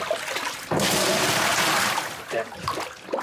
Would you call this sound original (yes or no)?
yes